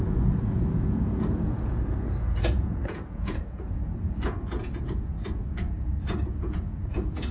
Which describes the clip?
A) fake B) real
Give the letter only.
A